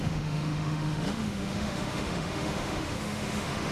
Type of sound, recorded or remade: remade